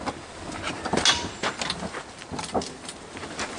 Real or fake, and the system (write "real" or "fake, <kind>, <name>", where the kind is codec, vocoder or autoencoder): real